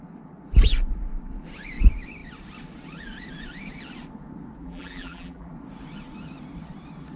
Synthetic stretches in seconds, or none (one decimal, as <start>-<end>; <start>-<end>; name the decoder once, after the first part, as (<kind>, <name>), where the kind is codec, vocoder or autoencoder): 4.6-5.5 (vocoder, BigVGAN v2)